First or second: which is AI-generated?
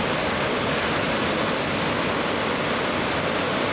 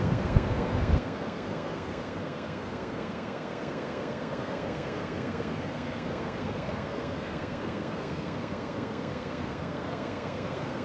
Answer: second